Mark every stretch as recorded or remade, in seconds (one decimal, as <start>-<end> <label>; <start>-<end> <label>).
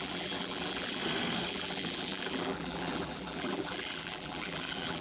0.0-1.0 remade; 1.0-1.5 recorded; 1.5-5.0 remade